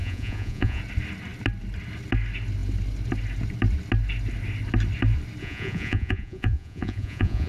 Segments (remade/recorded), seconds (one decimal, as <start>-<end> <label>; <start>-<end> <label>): 0.0-0.8 remade; 0.8-5.4 recorded; 5.4-7.5 remade